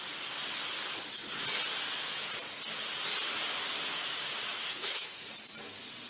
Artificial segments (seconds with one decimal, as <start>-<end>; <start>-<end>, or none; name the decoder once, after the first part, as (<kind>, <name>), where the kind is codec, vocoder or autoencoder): 4.5-5.2 (autoencoder, DAC-VAE)